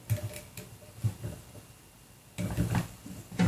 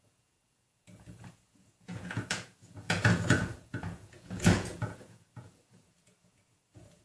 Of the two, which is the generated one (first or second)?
second